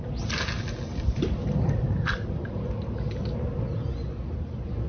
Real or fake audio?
real